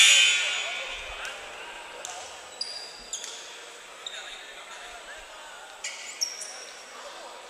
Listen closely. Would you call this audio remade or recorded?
recorded